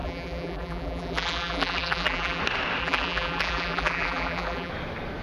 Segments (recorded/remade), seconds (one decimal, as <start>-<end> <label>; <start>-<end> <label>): 0.0-2.4 remade; 2.4-2.8 recorded; 2.8-4.7 remade; 4.7-5.2 recorded